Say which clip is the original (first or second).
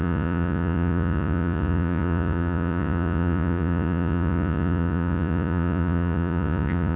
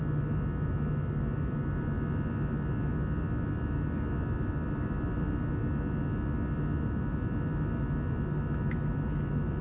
second